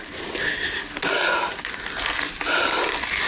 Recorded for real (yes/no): yes